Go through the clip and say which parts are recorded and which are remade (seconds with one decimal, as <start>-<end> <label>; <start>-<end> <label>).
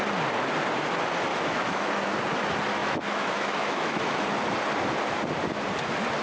0.0-1.3 recorded; 1.3-1.9 remade; 1.9-2.8 recorded; 2.8-4.2 remade; 4.2-6.2 recorded